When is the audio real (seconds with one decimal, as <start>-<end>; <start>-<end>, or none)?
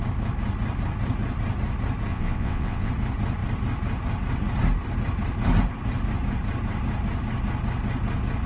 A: 0.0-2.1; 2.9-8.5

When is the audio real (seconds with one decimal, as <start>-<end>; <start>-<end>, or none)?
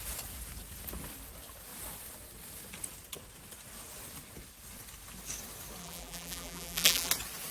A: 0.0-5.8; 7.1-7.5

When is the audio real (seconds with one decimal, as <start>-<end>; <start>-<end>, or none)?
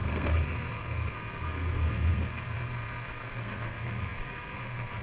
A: none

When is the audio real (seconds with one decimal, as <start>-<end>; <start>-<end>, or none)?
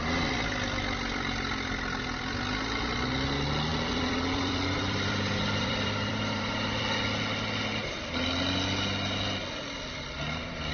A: 0.0-3.7; 6.8-10.7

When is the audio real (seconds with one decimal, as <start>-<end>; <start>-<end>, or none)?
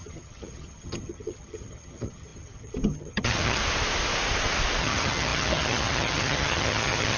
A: 3.6-4.8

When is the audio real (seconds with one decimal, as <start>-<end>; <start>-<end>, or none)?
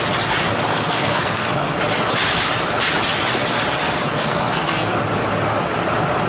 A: 0.0-0.7; 1.8-4.2; 5.0-6.3